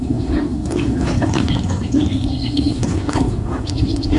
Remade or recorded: remade